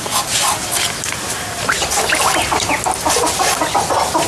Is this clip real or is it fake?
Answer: real